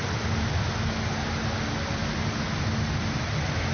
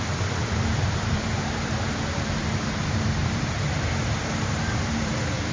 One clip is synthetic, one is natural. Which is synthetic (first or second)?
second